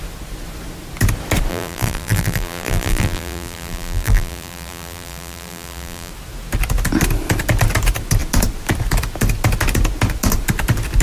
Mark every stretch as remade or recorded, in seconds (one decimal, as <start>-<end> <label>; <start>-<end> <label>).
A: 0.0-1.5 recorded; 1.5-6.1 remade; 6.1-11.0 recorded